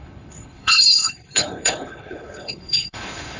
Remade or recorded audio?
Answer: remade